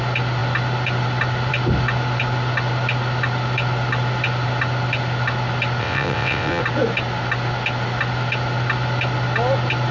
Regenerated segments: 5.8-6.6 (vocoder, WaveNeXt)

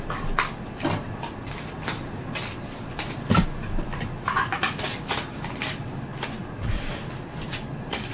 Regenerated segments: 6.4-7.1 (vocoder, Vocos)

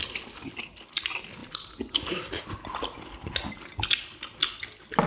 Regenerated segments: none

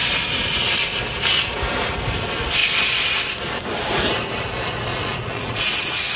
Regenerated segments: 4.9-6.2 (vocoder, Vocos)

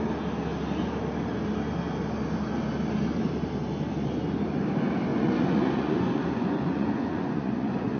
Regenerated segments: 5.1-8.0 (vocoder, Vocos)

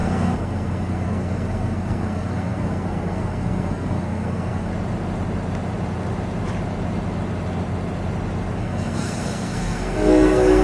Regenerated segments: 0.0-4.7 (codec, SNAC); 8.6-10.6

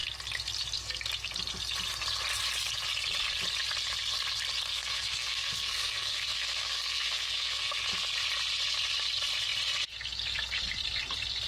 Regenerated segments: 4.7-7.8 (codec, SNAC)